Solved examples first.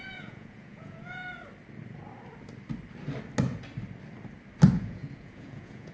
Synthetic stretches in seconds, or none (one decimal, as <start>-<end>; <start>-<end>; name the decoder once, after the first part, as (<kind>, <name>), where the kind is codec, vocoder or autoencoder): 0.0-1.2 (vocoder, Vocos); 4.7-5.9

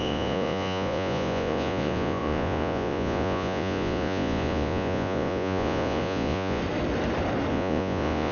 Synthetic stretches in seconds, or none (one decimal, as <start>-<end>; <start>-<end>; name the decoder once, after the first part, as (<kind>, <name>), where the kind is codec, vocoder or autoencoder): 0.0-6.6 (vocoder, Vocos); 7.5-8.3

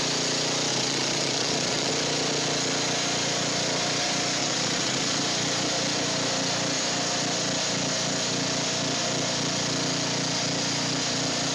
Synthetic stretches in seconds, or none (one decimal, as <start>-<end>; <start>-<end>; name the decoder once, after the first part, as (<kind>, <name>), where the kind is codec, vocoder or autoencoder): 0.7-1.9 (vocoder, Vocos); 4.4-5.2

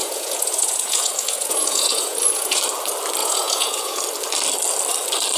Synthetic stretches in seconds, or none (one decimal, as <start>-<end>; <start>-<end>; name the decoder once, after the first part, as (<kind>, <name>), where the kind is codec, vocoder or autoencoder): 0.0-2.6 (vocoder, Vocos); 3.2-4.0

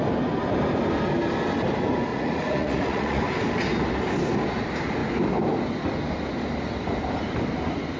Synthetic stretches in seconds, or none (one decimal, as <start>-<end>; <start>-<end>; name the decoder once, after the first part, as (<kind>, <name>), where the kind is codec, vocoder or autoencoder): 2.1-3.2 (vocoder, Vocos)